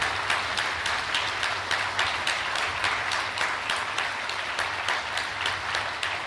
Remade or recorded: recorded